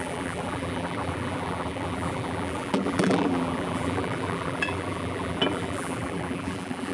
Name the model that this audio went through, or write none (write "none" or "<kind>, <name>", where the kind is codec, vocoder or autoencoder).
vocoder, BigVGAN v2